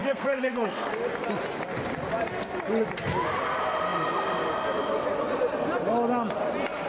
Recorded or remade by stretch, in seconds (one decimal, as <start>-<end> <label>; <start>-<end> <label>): 0.0-0.9 remade; 0.9-6.9 recorded

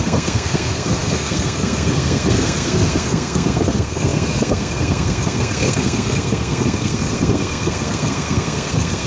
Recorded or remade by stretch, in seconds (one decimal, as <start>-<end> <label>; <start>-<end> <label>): 0.0-9.1 remade

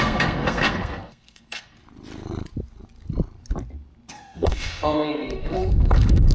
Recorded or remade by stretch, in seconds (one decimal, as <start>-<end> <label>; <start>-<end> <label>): 0.0-1.8 remade; 1.8-4.1 recorded; 4.1-6.3 remade

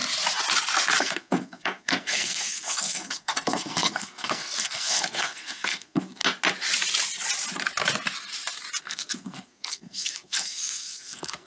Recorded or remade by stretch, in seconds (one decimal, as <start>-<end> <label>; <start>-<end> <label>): 0.0-1.0 recorded; 1.0-6.2 remade; 6.2-8.8 recorded; 8.8-11.5 remade

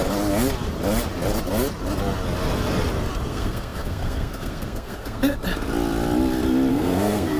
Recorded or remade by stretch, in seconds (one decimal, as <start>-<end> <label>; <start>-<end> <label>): 0.0-3.3 recorded; 3.3-5.4 remade; 5.4-6.7 recorded; 6.7-7.4 remade